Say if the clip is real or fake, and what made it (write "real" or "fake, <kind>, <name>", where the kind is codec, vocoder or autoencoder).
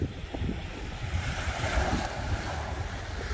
fake, vocoder, BigVGAN v2